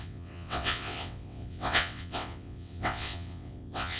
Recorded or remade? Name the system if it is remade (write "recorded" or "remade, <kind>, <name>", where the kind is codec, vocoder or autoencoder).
remade, vocoder, WaveNeXt